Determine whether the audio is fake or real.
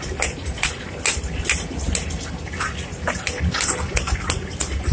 real